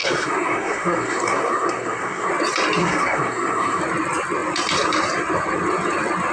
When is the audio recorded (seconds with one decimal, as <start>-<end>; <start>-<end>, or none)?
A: 2.3-2.8; 3.8-6.3